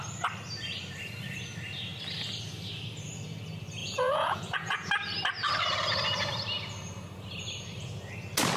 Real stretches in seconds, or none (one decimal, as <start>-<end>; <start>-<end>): 0.0-3.8; 4.9-8.6